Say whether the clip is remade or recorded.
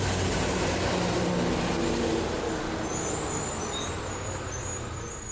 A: recorded